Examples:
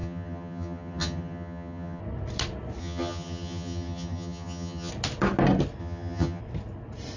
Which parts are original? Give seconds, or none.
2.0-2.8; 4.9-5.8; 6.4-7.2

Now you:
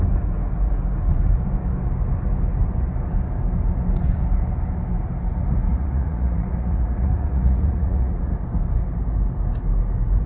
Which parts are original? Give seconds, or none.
0.0-5.7; 8.3-10.3

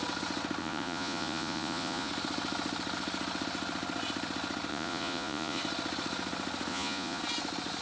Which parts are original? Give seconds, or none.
0.0-0.6; 2.1-4.7; 5.6-6.7; 7.2-7.8

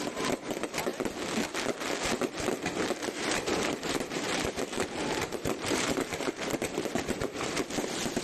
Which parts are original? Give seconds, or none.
0.9-3.1